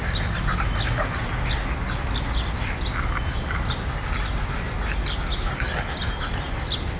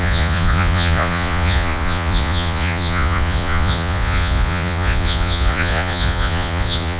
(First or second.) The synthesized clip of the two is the second